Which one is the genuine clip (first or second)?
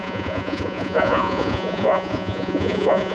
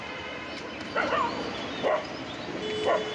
second